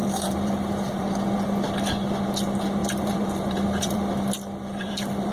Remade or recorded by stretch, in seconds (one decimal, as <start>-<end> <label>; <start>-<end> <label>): 0.0-1.2 remade; 1.2-2.8 recorded; 2.8-5.3 remade

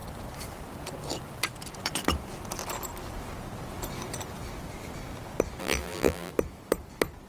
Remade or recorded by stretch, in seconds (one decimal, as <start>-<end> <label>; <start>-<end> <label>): 0.0-5.6 recorded; 5.6-6.3 remade; 6.3-7.3 recorded

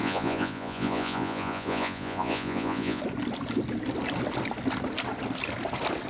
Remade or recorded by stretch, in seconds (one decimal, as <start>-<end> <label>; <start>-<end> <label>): 0.0-3.0 remade; 3.0-6.1 recorded

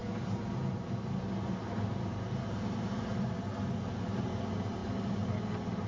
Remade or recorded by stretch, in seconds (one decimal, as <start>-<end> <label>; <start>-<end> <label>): 0.0-5.9 recorded

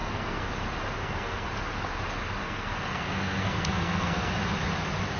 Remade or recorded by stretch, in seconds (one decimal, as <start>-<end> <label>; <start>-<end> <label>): 0.0-0.5 remade; 0.5-1.0 recorded; 1.0-1.5 remade; 1.5-2.4 recorded; 2.4-4.3 remade; 4.3-5.2 recorded

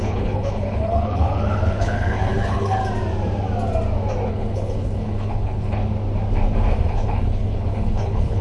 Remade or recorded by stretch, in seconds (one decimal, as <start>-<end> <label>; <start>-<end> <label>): 0.0-2.8 remade; 2.8-4.3 recorded; 4.3-5.8 remade; 5.8-6.9 recorded; 6.9-8.4 remade

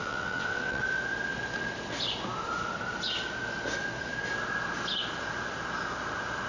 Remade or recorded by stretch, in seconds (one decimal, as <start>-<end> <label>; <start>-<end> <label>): 0.0-0.8 remade; 0.8-6.5 recorded